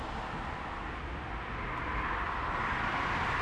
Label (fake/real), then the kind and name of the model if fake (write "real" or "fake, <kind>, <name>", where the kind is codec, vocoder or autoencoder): real